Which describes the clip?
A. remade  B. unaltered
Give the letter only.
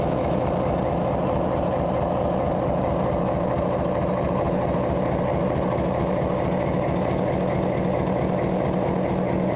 B